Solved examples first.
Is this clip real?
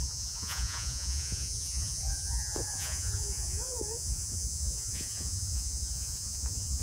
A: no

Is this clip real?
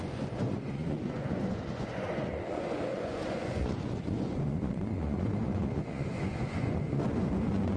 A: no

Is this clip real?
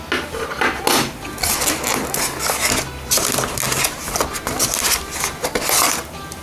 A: yes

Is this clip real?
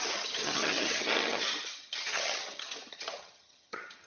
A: no